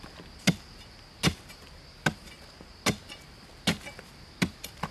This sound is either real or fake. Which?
real